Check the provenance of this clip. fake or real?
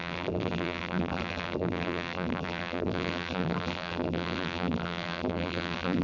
fake